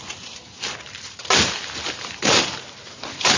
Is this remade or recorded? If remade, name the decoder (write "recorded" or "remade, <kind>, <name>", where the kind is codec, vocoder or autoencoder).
recorded